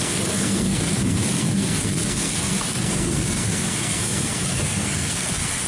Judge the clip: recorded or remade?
remade